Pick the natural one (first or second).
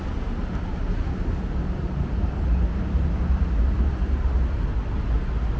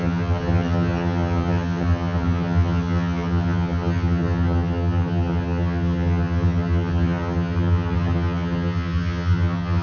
first